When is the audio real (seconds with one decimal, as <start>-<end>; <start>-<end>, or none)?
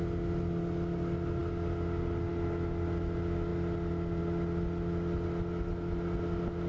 0.0-6.7